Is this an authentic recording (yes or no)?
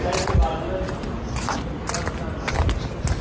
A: yes